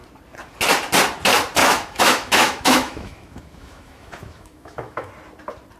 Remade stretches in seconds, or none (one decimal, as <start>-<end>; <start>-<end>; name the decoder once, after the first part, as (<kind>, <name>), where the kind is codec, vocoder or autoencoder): 1.6-5.1 (autoencoder, DAC-VAE)